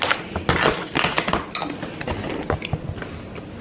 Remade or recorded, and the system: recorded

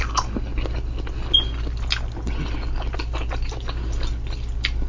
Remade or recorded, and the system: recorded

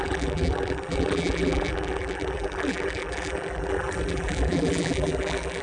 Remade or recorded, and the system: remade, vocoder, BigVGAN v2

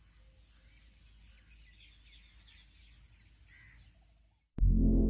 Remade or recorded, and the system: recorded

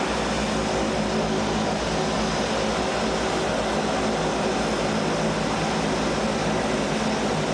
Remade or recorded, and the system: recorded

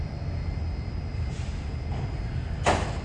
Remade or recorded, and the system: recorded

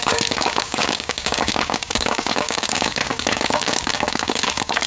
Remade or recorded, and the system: remade, codec, DAC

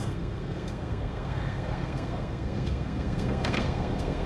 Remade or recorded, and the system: remade, codec, SNAC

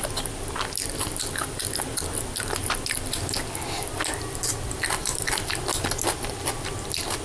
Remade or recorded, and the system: recorded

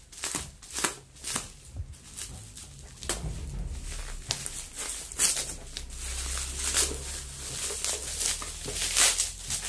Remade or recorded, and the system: recorded